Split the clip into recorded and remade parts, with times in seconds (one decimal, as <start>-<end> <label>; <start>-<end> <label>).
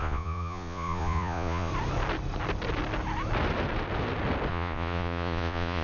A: 0.0-1.7 remade; 1.7-4.5 recorded; 4.5-5.8 remade